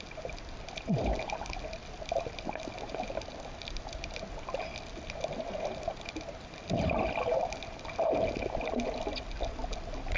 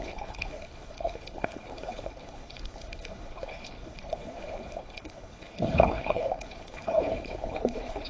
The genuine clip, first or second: first